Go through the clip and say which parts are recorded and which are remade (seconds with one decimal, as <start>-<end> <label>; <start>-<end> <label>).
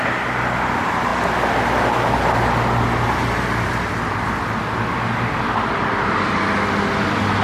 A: 0.0-7.4 recorded